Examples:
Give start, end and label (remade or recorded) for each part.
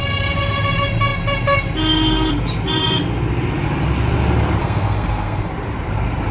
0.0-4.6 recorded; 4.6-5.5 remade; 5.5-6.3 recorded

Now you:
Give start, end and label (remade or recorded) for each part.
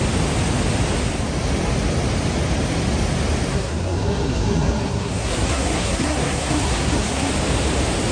0.0-3.5 recorded; 3.5-7.3 remade; 7.3-8.1 recorded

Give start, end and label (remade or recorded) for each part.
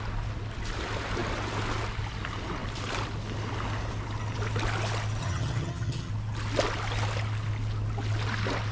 0.0-5.2 recorded; 5.2-6.1 remade; 6.1-8.7 recorded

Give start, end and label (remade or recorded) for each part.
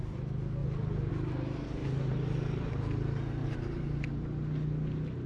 0.0-1.8 recorded; 1.8-2.8 remade; 2.8-3.4 recorded; 3.4-4.1 remade; 4.1-5.3 recorded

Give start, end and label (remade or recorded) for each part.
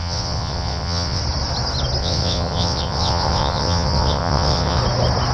0.0-1.2 remade; 1.2-2.0 recorded; 2.0-4.8 remade; 4.8-5.3 recorded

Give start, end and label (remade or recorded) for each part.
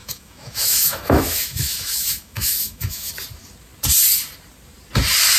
0.0-3.1 remade; 3.1-5.4 recorded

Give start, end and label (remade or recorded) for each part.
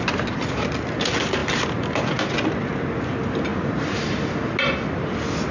0.0-1.4 recorded; 1.4-1.9 remade; 1.9-3.5 recorded; 3.5-4.3 remade; 4.3-5.5 recorded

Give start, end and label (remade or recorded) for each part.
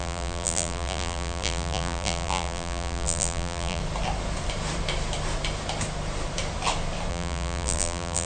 0.0-3.8 remade; 3.8-7.1 recorded; 7.1-8.3 remade